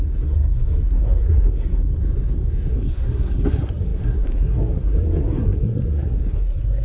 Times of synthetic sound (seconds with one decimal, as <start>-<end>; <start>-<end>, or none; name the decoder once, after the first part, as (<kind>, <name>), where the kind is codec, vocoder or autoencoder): 0.0-1.9 (codec, SNAC); 2.7-6.8